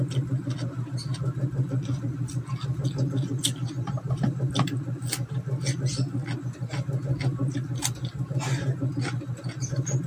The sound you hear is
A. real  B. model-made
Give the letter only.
A